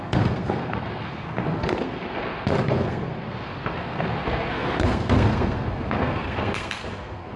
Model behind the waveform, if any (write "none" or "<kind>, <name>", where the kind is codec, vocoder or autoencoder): codec, SNAC